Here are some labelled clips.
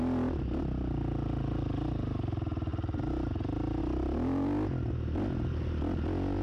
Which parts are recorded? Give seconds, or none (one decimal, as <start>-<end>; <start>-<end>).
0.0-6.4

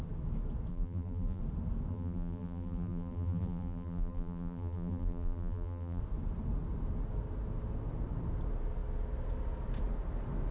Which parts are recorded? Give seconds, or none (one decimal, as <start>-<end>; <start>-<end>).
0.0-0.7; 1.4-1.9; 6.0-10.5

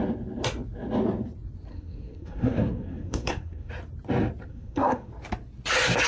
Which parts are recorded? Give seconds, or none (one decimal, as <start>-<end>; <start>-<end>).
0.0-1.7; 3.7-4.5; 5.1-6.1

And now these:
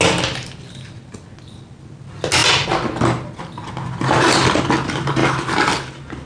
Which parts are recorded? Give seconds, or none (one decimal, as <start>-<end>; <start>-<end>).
0.0-6.3

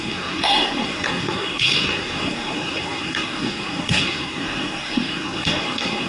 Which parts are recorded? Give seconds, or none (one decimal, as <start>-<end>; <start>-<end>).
none

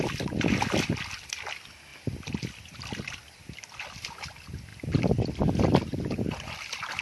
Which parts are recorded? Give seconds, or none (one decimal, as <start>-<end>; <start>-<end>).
0.0-7.0